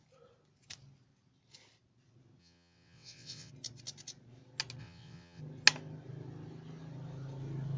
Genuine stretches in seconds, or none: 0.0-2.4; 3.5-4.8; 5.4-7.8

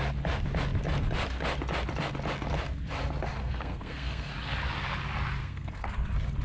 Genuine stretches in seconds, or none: 0.0-3.4; 4.3-5.4; 5.9-6.4